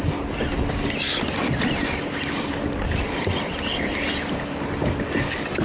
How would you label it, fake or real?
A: real